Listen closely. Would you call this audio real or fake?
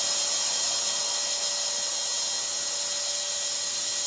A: real